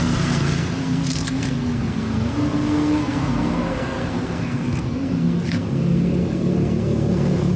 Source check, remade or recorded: remade